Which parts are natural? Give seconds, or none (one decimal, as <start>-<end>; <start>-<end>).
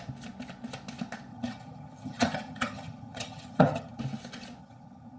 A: 0.0-1.3; 4.0-4.6